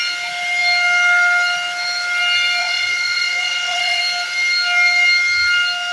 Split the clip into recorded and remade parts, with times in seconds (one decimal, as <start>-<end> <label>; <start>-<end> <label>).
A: 0.0-2.6 recorded; 2.6-4.0 remade; 4.0-5.9 recorded